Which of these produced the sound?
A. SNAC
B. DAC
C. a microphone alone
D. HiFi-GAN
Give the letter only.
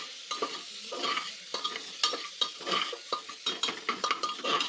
C